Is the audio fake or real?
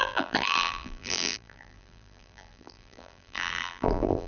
fake